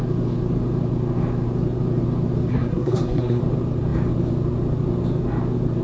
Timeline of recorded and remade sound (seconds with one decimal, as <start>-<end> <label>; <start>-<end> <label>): 0.0-2.5 recorded; 2.5-3.4 remade; 3.4-5.8 recorded